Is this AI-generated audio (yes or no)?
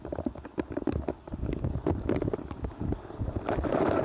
no